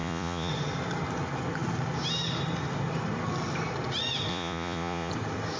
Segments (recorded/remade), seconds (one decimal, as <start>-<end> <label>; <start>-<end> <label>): 0.0-0.5 remade; 0.5-4.3 recorded; 4.3-5.1 remade; 5.1-5.6 recorded